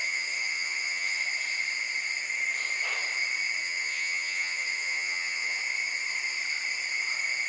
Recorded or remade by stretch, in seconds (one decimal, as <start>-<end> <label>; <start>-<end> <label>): 0.0-1.2 remade; 1.2-3.6 recorded; 3.6-5.6 remade; 5.6-7.5 recorded

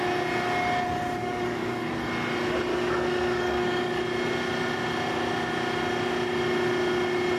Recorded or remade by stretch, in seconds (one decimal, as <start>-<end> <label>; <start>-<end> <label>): 0.0-1.2 recorded; 1.2-2.0 remade; 2.0-2.7 recorded; 2.7-4.0 remade; 4.0-7.4 recorded

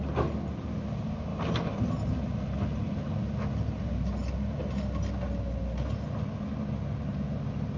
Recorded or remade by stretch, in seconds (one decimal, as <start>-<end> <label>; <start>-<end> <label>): 0.0-7.8 recorded